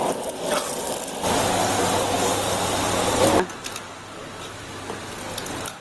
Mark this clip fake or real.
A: real